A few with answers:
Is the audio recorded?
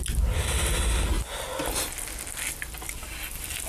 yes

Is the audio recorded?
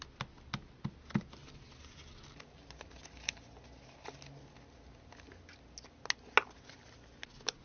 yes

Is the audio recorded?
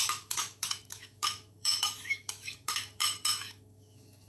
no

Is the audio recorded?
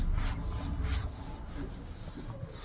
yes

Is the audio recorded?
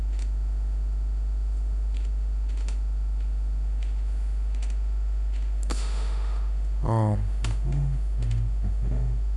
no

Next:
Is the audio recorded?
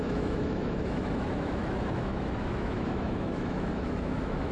no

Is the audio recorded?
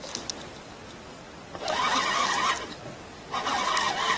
yes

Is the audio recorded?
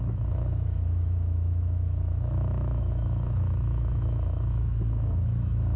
no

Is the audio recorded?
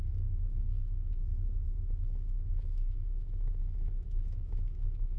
no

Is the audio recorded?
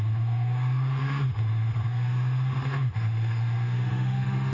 no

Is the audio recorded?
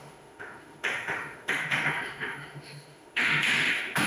no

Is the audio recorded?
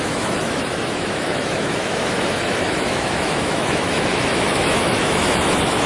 no